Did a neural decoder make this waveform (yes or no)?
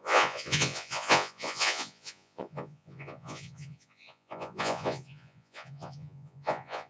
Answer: yes